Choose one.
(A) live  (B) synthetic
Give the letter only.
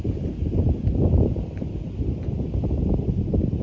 A